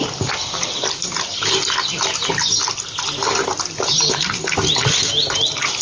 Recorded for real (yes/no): yes